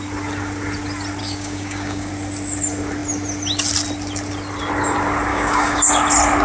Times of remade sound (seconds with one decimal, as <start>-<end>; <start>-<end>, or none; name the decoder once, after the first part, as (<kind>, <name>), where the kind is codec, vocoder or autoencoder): 1.2-2.1 (codec, DAC); 5.3-5.9